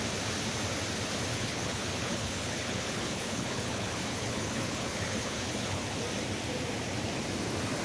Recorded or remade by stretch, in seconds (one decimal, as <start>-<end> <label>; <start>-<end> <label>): 0.0-1.3 recorded; 1.3-6.0 remade; 6.0-7.8 recorded